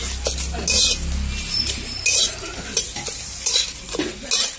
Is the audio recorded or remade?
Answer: recorded